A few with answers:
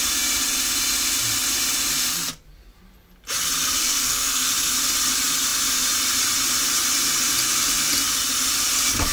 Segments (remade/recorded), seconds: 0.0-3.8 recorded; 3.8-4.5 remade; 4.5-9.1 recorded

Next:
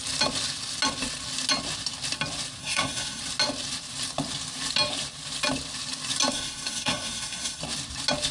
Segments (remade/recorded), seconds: 0.0-2.6 recorded; 2.6-3.2 remade; 3.2-6.3 recorded; 6.3-7.6 remade; 7.6-8.3 recorded

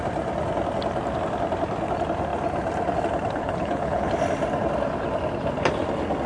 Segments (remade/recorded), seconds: 0.0-3.4 recorded; 3.4-4.1 remade; 4.1-6.3 recorded